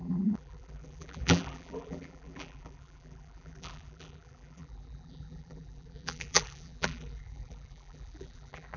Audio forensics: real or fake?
fake